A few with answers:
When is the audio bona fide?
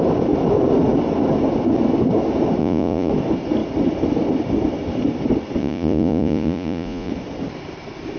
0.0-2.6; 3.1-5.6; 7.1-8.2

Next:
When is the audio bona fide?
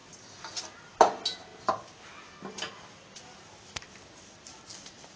0.0-5.2